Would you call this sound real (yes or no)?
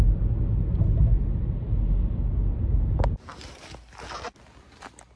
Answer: yes